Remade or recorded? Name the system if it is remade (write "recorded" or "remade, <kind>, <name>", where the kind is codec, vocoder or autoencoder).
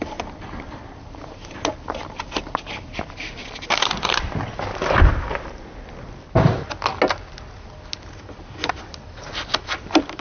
recorded